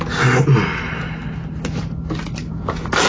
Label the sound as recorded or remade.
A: recorded